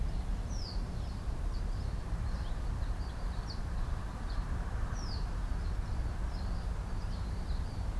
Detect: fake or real fake